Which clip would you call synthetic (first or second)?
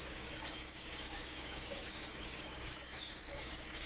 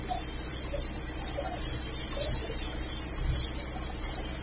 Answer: first